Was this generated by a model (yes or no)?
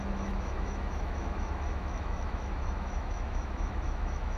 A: yes